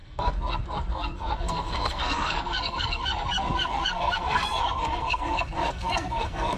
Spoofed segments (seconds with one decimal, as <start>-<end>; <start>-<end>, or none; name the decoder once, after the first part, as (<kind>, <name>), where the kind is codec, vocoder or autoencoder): 0.0-6.6 (codec, SNAC)